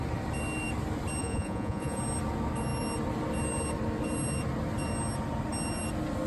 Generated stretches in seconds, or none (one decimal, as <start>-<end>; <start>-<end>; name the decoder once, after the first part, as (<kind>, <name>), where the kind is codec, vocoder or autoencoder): 1.2-2.0 (vocoder, Vocos)